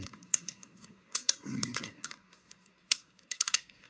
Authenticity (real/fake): fake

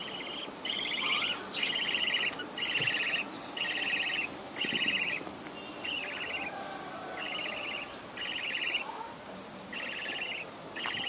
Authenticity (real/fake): real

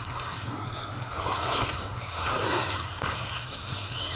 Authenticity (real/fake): fake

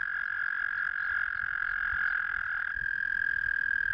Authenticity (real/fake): real